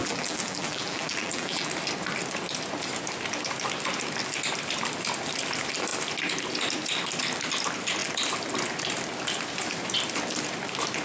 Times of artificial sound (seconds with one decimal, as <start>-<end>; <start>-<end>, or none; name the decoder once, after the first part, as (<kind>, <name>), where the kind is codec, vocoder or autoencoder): 0.0-1.7 (vocoder, BigVGAN v2)